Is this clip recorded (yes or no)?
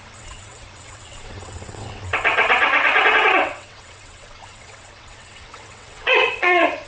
no